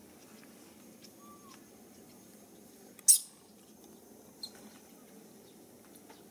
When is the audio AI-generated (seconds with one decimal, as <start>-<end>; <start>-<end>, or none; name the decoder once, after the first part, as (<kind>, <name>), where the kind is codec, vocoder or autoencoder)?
none